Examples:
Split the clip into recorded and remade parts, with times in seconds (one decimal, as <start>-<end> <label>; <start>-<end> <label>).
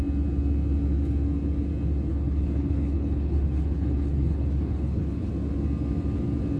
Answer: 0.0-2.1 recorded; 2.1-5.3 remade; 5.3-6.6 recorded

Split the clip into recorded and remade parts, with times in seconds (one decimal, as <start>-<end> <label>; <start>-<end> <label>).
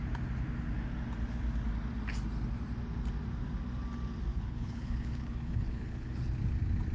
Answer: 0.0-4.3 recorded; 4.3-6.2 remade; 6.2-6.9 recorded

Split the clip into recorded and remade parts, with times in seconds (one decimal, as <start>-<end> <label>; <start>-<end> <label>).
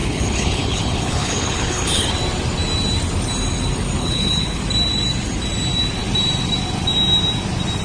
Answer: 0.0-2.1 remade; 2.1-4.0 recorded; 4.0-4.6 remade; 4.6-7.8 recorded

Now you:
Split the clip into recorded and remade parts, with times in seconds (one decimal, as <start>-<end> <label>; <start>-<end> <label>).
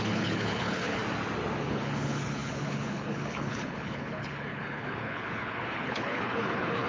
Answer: 0.0-1.0 remade; 1.0-1.6 recorded; 1.6-6.9 remade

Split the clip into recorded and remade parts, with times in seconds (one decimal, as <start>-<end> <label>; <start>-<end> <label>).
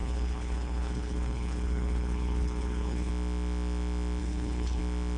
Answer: 0.0-3.1 remade; 3.1-4.2 recorded; 4.2-4.8 remade; 4.8-5.2 recorded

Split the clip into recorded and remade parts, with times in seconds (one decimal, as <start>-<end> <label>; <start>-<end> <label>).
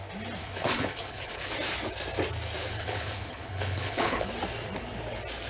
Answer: 0.0-0.4 recorded; 0.4-1.5 remade; 1.5-2.7 recorded; 2.7-4.3 remade; 4.3-5.5 recorded